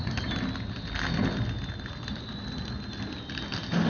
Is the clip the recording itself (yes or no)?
yes